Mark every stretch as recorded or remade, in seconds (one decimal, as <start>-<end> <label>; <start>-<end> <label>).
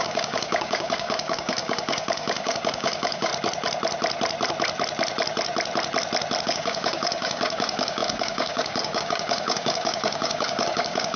0.0-3.3 remade; 3.3-6.4 recorded; 6.4-11.2 remade